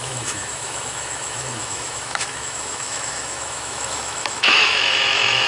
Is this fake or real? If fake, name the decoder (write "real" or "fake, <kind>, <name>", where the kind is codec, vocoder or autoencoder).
fake, autoencoder, DAC-VAE